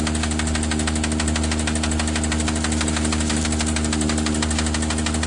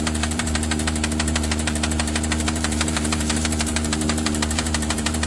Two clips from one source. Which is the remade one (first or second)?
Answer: second